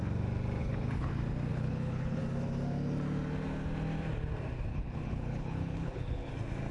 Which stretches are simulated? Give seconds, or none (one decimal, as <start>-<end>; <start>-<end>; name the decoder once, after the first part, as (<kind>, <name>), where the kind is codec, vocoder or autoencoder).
0.6-1.1 (codec, HILCodec); 1.5-2.2; 4.7-6.3